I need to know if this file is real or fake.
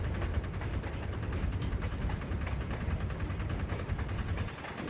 real